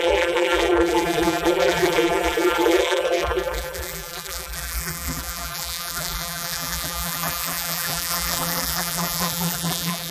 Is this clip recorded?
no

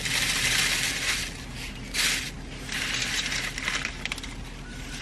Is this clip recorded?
yes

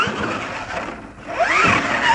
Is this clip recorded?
yes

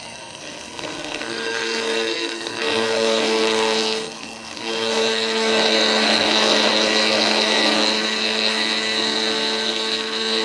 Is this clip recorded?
no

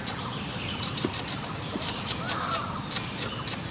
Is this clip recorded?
yes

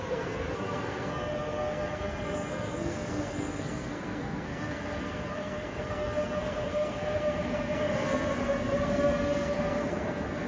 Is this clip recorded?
no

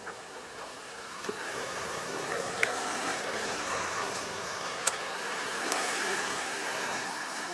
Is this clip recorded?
no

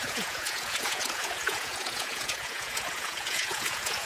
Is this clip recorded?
no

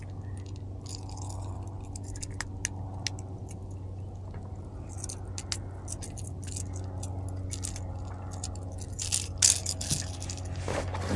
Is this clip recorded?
yes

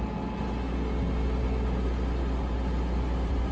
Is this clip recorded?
yes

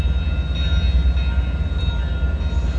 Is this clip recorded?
yes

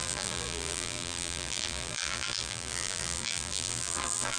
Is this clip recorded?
no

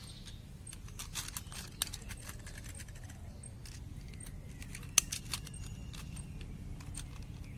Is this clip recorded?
yes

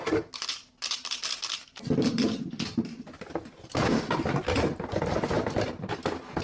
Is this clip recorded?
yes